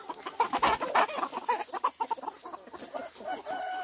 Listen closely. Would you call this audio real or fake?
real